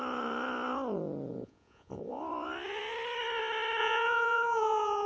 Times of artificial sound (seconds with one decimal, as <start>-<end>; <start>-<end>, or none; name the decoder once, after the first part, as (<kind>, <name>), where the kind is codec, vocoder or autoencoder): 1.3-2.2 (vocoder, Vocos); 3.8-5.1